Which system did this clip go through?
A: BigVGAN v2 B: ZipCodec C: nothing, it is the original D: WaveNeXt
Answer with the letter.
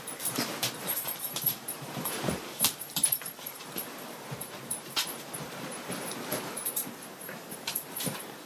A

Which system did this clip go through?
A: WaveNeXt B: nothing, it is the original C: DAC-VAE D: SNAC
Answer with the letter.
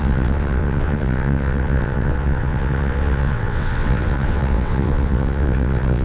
A